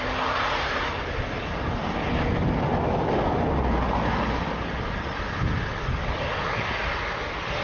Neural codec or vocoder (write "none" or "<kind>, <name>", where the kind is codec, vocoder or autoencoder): none